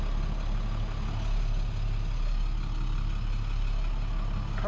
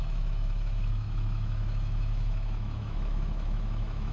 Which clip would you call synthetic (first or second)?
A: second